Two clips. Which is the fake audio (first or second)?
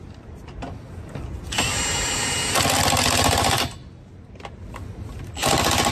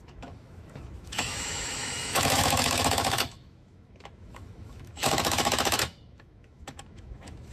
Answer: second